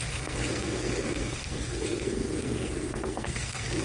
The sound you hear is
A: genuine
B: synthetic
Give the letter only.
B